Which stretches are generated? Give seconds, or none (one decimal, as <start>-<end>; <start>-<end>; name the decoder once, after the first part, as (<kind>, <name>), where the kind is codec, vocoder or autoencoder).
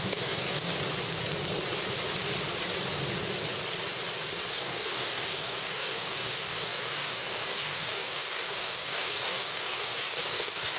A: 0.0-0.7 (codec, DAC); 4.5-10.8